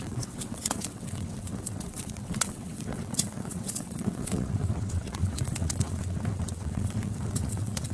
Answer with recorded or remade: remade